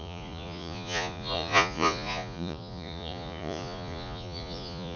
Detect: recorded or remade remade